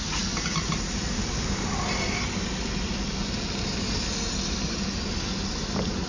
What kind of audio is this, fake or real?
real